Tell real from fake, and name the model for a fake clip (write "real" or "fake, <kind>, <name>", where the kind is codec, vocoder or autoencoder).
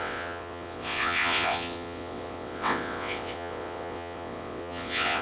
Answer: fake, vocoder, WaveNeXt